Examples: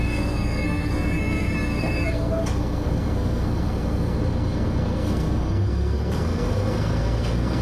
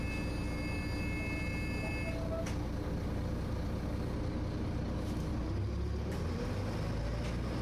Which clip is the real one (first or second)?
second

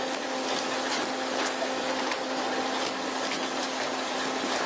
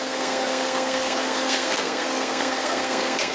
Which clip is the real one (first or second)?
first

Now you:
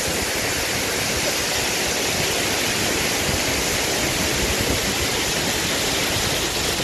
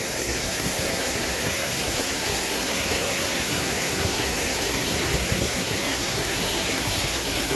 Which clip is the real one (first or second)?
first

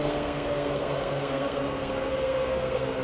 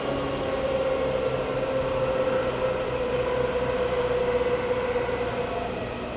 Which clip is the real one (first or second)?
second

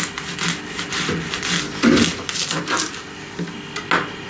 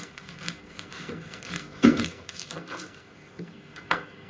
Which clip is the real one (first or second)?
first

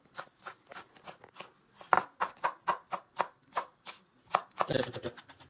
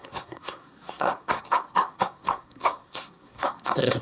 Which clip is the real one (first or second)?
first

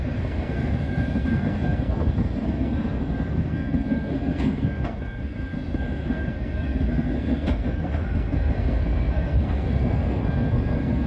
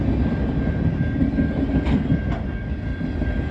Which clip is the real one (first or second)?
second